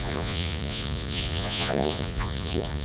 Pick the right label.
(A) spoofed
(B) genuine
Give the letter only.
A